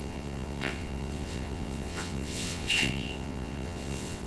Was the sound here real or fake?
fake